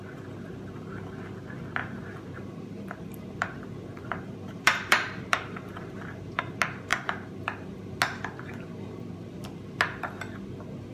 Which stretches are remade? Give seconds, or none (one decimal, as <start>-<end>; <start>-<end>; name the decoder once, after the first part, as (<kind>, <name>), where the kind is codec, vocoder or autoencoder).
1.8-6.4 (vocoder, BigVGAN v2); 6.9-8.0